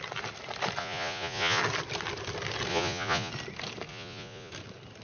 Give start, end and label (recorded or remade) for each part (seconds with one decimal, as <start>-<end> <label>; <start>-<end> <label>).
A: 0.0-0.8 recorded; 0.8-1.6 remade; 1.6-2.7 recorded; 2.7-3.3 remade; 3.3-3.9 recorded; 3.9-4.5 remade; 4.5-5.0 recorded